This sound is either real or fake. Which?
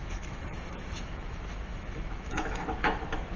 fake